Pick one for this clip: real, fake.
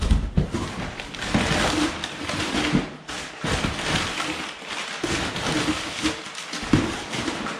real